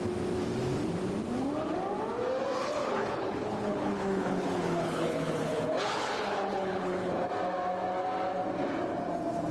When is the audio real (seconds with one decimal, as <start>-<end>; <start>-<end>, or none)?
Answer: 0.0-2.6; 7.3-9.5